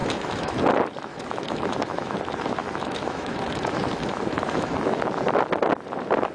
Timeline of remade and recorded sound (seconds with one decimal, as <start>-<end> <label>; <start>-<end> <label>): 0.0-0.6 remade; 0.6-1.1 recorded; 1.1-2.2 remade; 2.2-2.6 recorded; 2.6-5.0 remade; 5.0-6.3 recorded